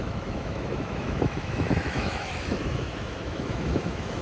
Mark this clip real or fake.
fake